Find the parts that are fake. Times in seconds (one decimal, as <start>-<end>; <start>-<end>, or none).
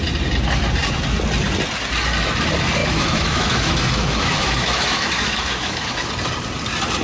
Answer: 2.8-6.1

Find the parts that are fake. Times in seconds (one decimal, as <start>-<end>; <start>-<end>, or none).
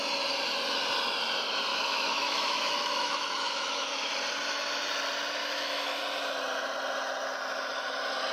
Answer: 1.7-4.1; 5.4-6.0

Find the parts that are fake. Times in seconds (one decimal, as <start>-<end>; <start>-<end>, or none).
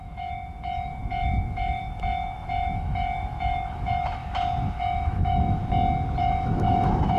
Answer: 0.0-4.2; 4.8-5.6; 6.2-7.2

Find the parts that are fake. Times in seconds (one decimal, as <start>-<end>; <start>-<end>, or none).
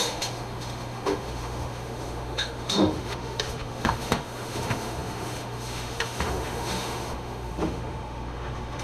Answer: 0.0-8.8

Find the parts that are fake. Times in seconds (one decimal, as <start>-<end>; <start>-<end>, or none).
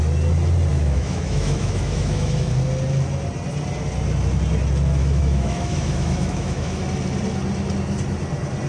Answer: 0.7-2.5; 5.0-6.8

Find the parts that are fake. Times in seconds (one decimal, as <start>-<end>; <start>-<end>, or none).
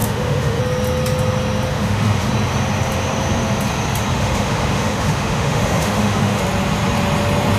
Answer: 0.0-0.6; 1.7-2.3; 4.1-6.4